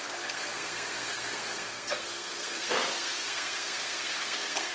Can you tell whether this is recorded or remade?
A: remade